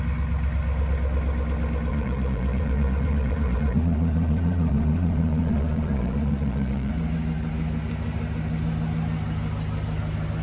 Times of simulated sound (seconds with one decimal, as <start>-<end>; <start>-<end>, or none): 1.9-6.9